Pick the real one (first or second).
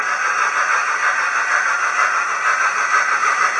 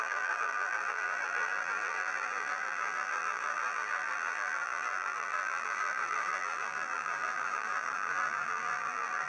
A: first